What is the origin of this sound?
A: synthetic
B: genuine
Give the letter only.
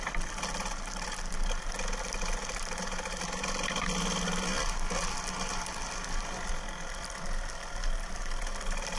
B